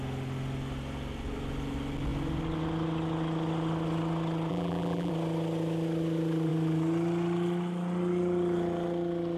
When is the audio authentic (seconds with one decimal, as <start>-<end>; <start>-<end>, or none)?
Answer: 0.0-4.5; 5.1-9.4